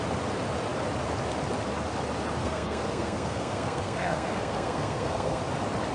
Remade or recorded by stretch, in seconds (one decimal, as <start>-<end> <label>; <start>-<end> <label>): 0.0-2.4 recorded; 2.4-5.4 remade; 5.4-5.9 recorded